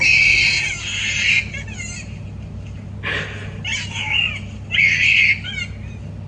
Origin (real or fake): real